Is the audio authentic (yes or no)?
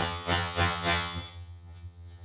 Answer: no